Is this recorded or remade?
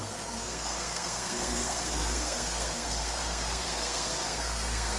remade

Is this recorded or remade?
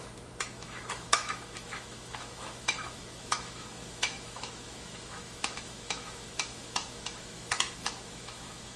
remade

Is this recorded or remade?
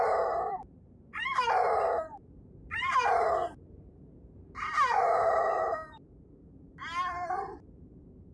remade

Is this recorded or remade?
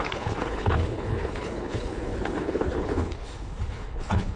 remade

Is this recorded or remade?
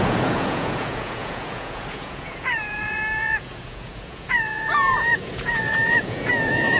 remade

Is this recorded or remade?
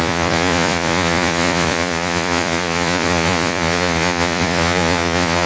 remade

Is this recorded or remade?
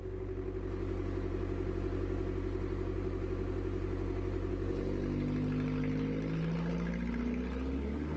recorded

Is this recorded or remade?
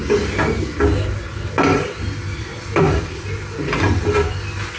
recorded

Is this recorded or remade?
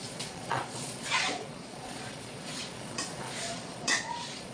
remade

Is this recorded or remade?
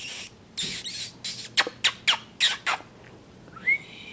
recorded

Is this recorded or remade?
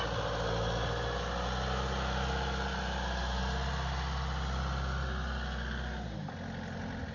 recorded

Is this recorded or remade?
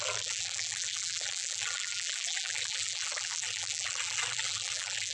remade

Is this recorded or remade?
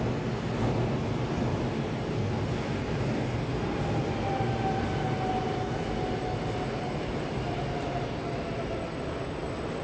recorded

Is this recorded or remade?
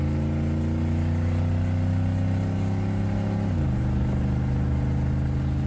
recorded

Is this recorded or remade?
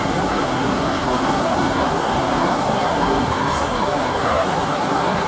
remade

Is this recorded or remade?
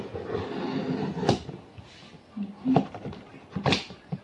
recorded